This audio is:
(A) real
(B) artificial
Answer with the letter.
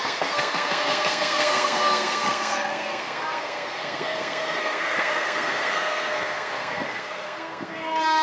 B